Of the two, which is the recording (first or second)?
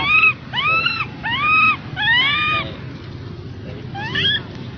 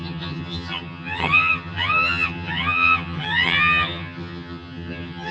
first